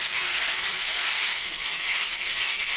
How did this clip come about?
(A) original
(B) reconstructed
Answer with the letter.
B